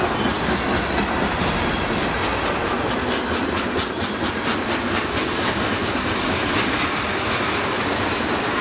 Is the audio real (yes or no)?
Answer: yes